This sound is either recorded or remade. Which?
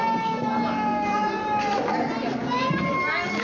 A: recorded